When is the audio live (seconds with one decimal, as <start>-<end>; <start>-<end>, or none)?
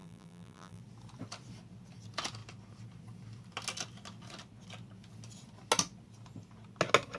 0.8-7.2